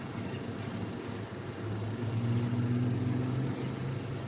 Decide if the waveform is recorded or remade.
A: recorded